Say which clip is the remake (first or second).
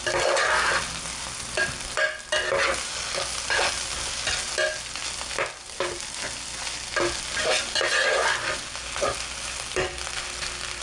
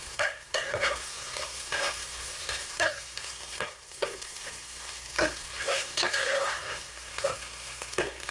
second